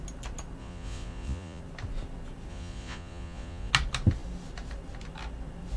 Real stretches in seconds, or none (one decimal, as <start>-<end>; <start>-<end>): 0.0-0.6; 1.6-2.5; 3.7-5.8